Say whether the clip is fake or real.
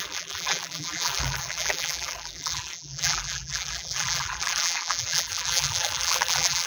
fake